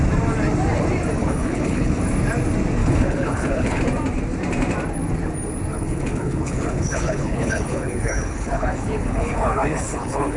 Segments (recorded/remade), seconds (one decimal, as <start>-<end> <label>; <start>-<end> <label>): 0.0-1.2 recorded; 1.2-2.0 remade; 2.0-2.8 recorded; 2.8-3.8 remade; 3.8-5.7 recorded; 5.7-10.4 remade